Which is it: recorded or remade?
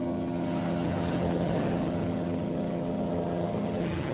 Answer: remade